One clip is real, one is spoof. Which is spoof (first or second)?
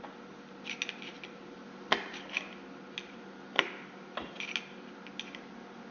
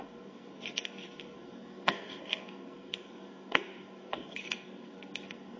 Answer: second